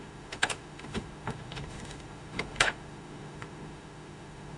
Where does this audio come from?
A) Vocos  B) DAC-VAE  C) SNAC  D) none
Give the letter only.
B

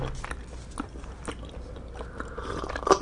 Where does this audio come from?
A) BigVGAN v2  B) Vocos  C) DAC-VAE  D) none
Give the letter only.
D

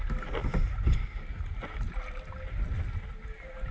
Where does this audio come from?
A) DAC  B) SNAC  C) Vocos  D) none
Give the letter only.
D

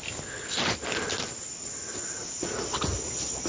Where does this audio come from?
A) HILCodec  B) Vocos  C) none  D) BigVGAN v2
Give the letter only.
C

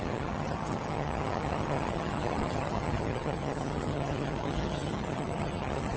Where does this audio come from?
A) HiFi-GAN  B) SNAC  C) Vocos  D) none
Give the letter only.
A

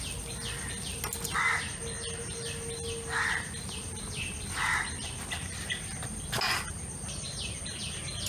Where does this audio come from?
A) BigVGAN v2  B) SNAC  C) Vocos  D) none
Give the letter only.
D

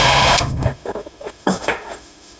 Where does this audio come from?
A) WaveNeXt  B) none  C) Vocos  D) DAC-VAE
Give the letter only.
D